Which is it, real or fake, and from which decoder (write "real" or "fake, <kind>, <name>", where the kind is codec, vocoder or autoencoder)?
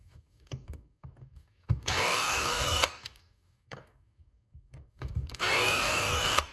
fake, codec, DAC